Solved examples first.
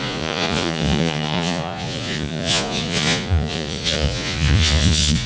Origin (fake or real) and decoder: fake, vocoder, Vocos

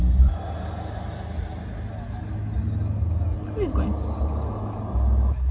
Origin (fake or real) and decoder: real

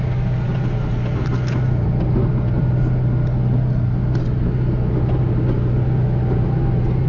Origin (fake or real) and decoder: real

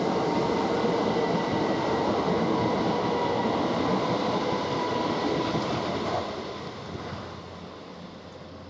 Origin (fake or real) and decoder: real